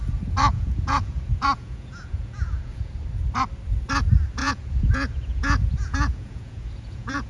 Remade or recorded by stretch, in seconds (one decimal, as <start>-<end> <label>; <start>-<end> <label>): 0.0-0.5 recorded; 0.5-2.9 remade; 2.9-4.4 recorded; 4.4-7.3 remade